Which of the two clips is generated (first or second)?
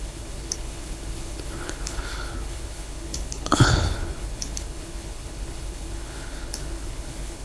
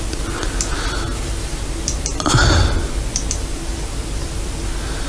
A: first